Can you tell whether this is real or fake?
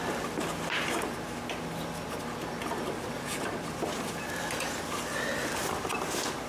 real